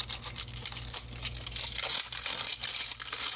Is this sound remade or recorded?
recorded